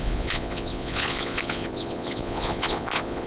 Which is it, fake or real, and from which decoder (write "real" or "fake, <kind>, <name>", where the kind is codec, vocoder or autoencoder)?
fake, vocoder, Vocos